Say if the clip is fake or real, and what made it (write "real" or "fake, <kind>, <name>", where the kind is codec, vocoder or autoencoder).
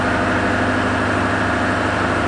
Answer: real